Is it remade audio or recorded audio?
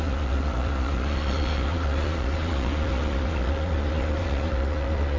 remade